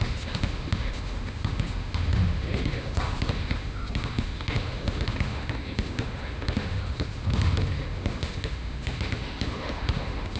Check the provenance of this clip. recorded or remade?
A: remade